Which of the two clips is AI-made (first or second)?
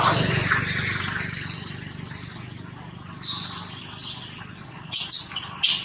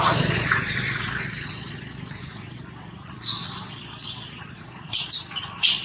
second